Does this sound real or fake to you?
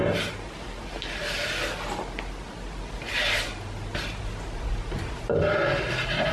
real